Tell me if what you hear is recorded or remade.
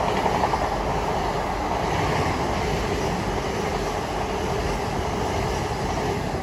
recorded